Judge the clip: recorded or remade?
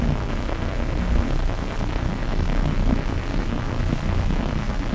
remade